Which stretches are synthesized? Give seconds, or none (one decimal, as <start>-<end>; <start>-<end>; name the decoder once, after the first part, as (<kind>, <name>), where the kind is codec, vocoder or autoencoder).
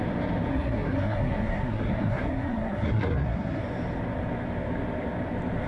0.5-3.6 (codec, SNAC)